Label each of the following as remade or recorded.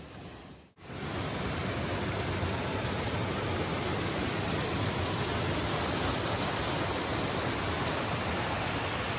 recorded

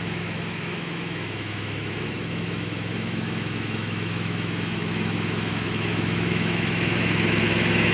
remade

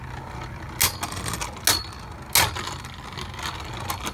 recorded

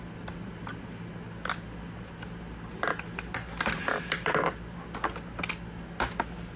recorded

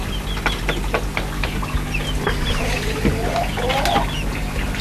recorded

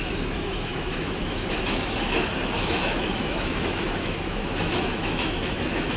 remade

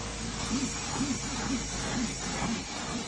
recorded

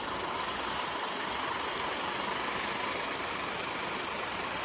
recorded